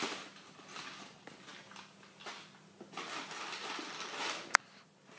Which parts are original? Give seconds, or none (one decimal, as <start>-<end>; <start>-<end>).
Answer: 0.0-5.2